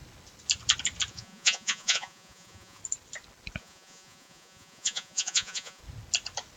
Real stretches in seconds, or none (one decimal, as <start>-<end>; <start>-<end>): 0.0-1.1; 2.8-3.6; 5.8-6.6

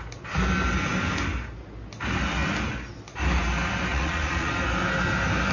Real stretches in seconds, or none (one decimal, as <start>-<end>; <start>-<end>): 0.0-3.9; 4.5-5.5

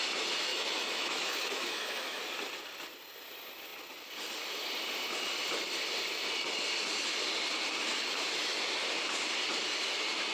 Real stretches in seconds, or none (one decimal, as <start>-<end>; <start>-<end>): 0.0-0.5; 2.2-10.3